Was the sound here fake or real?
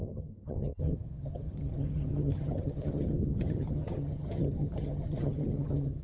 fake